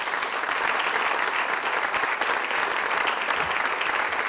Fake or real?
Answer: real